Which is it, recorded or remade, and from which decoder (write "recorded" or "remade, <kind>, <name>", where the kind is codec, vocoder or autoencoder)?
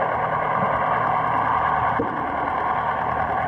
remade, vocoder, BigVGAN v2